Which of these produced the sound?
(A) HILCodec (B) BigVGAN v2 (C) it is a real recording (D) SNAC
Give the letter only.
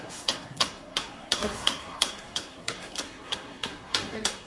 D